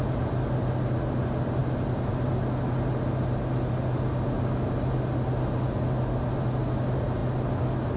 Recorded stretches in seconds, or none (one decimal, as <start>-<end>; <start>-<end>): 0.0-8.0